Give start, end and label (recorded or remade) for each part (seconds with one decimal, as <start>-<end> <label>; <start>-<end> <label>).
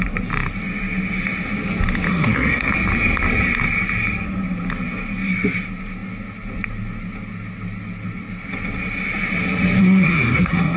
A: 0.0-2.1 recorded; 2.1-2.7 remade; 2.7-9.8 recorded; 9.8-10.8 remade